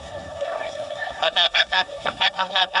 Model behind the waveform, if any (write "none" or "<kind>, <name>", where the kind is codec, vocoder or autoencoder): codec, SNAC